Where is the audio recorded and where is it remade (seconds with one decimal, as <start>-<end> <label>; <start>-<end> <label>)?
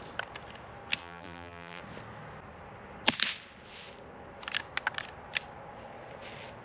0.0-1.0 recorded; 1.0-1.8 remade; 1.8-6.6 recorded